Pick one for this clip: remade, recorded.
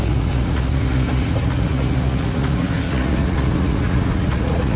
remade